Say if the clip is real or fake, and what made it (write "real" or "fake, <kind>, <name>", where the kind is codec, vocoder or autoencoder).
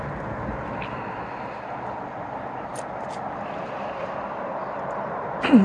real